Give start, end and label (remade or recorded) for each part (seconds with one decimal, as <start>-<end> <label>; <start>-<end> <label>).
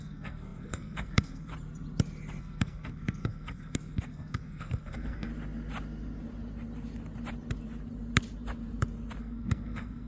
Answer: 0.0-1.5 remade; 1.5-2.4 recorded; 2.4-5.3 remade; 5.3-9.2 recorded; 9.2-10.1 remade